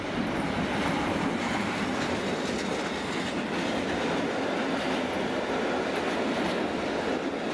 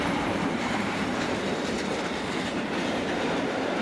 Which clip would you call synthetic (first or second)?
second